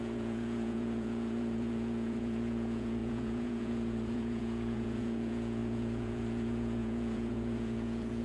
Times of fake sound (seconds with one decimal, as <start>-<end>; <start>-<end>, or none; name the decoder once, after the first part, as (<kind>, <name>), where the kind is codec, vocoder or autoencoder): 0.0-8.2 (vocoder, Vocos)